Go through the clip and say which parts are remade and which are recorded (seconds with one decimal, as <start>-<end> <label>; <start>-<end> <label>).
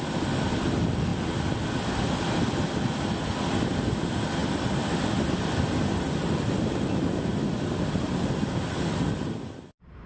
0.0-10.1 recorded